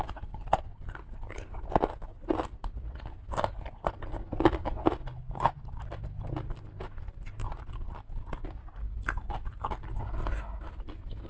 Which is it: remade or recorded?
recorded